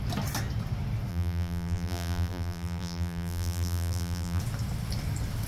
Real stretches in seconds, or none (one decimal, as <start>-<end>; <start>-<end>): 0.0-1.1; 4.4-5.5

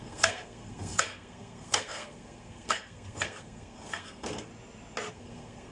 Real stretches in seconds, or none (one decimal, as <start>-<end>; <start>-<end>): 4.5-5.1